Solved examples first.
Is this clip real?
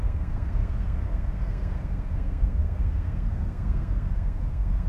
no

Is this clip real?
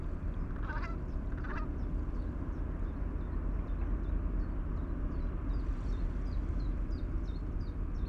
yes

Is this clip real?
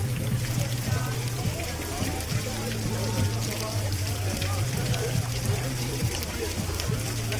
no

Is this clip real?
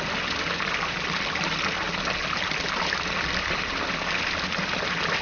yes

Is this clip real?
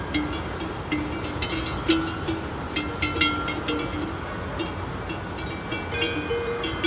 yes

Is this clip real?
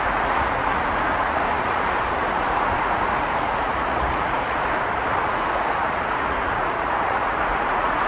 no